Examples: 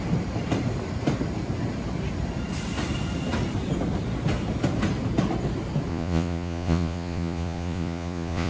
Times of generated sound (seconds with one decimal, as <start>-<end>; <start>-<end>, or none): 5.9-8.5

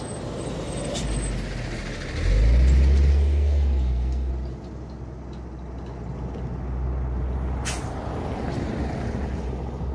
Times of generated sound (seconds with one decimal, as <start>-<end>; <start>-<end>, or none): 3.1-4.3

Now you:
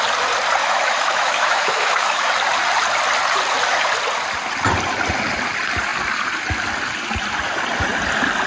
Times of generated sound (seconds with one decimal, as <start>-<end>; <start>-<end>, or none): 0.6-2.3

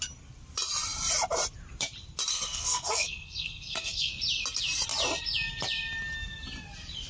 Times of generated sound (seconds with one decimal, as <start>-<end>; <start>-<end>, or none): 2.3-4.1

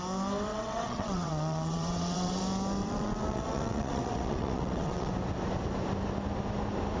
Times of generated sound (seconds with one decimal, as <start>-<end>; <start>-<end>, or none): 0.5-2.4; 2.8-5.1

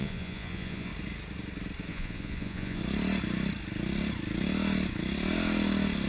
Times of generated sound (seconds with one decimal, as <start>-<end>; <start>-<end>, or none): 0.0-0.9; 1.9-2.8

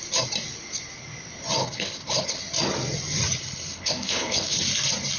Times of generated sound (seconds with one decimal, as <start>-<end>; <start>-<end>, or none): 1.6-2.4; 3.4-4.6